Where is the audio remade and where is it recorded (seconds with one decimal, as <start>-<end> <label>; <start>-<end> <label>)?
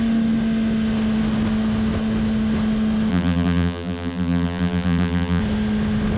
0.0-3.1 recorded; 3.1-5.4 remade; 5.4-6.2 recorded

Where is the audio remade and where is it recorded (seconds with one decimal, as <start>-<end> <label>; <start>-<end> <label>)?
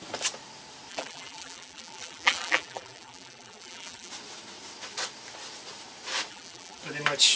0.0-0.9 recorded; 0.9-4.1 remade; 4.1-6.3 recorded; 6.3-6.8 remade; 6.8-7.4 recorded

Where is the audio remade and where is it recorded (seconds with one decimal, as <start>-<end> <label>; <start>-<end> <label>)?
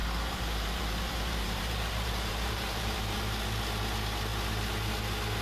0.0-3.2 remade; 3.2-5.4 recorded